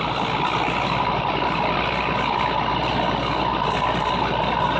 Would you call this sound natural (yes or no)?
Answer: yes